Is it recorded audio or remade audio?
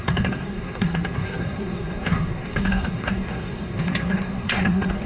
remade